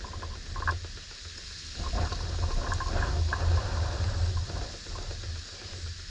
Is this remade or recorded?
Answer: recorded